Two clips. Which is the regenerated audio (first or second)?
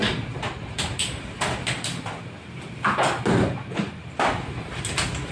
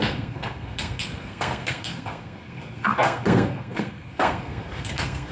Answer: second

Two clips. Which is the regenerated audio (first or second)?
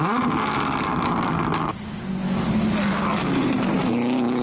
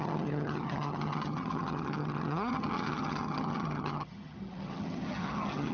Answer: second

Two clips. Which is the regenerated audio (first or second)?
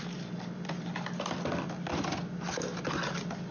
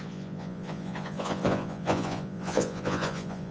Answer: second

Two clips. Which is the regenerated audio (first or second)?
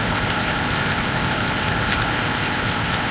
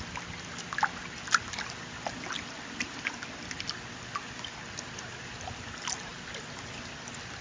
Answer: first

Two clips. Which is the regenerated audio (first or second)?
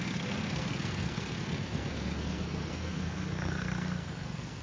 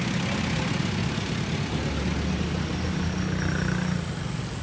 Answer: first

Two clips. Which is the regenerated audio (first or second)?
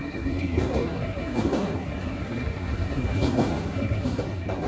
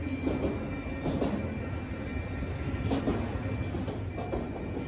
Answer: first